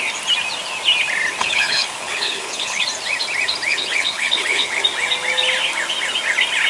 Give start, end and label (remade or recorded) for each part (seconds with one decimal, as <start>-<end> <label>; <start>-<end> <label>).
0.0-1.4 recorded; 1.4-2.8 remade; 2.8-3.7 recorded; 3.7-4.8 remade; 4.8-6.7 recorded